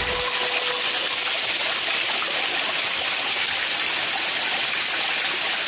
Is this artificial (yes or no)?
no